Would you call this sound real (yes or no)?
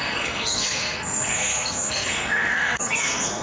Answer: no